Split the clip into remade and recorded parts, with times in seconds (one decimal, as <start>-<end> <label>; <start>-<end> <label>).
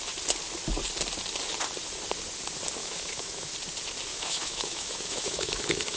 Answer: 0.0-2.8 recorded; 2.8-3.5 remade; 3.5-4.1 recorded; 4.1-6.0 remade